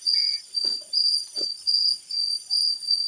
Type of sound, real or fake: fake